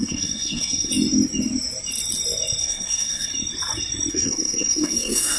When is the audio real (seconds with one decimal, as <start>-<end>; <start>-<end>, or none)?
0.9-2.6; 3.3-4.1